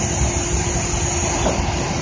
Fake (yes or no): no